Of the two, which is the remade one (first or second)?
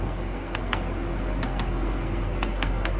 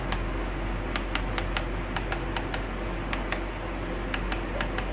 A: first